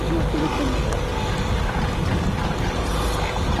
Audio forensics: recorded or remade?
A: recorded